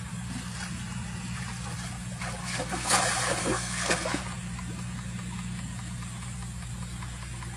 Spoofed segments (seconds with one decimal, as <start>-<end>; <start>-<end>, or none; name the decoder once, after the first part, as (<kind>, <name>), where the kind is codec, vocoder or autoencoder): 2.4-3.0 (codec, SNAC); 3.4-4.2